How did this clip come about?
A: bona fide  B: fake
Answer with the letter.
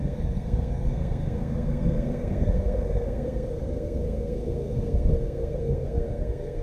B